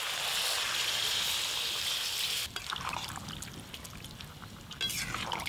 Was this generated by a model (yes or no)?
no